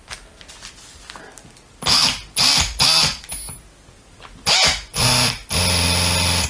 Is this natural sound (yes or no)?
yes